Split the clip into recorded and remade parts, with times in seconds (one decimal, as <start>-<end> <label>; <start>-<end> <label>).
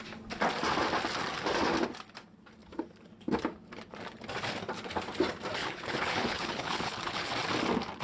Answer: 0.0-5.6 recorded; 5.6-7.3 remade; 7.3-8.0 recorded